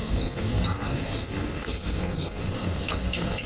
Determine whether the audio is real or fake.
fake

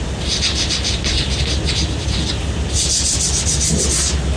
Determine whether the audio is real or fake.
real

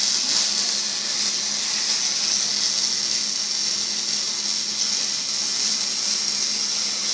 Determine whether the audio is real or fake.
real